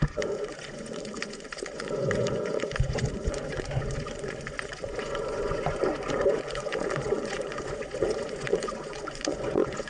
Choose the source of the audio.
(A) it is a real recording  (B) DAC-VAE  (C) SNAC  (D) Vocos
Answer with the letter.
D